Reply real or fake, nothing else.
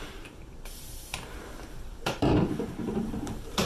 fake